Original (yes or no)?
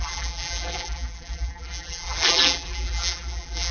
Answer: no